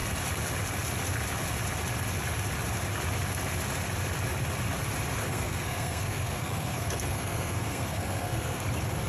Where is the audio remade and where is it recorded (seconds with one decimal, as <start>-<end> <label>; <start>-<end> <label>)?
0.0-5.2 recorded; 5.2-8.6 remade; 8.6-9.1 recorded